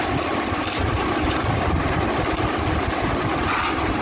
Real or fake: fake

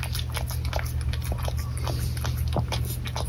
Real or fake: real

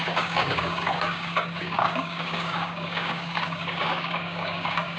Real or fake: fake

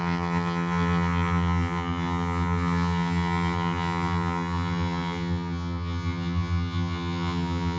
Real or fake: fake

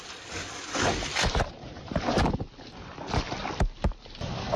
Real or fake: real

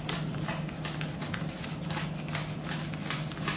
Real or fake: real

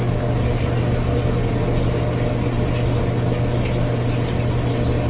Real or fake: real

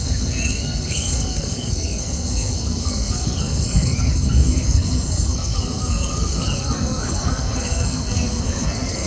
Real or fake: fake